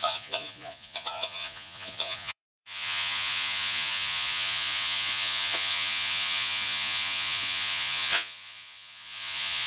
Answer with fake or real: fake